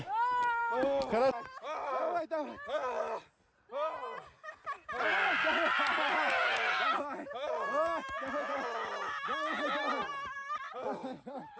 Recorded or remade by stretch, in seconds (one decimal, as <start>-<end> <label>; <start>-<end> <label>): 0.0-11.6 recorded